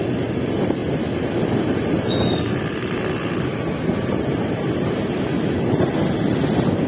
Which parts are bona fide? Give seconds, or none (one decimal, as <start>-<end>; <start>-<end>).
0.0-6.9